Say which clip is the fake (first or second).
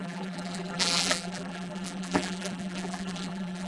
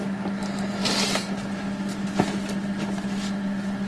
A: first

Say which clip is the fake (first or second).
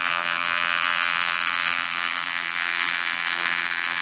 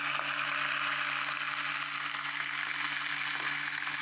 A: first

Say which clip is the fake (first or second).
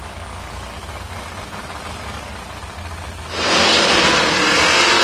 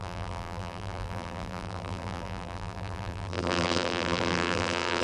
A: second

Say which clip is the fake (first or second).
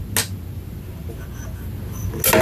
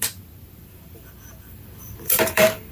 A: second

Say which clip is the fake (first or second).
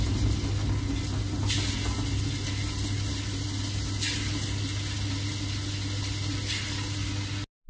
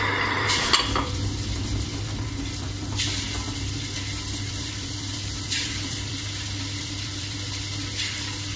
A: second